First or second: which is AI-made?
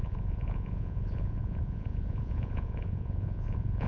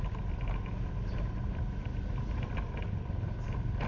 first